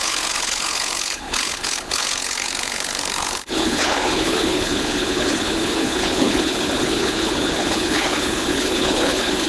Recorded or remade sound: remade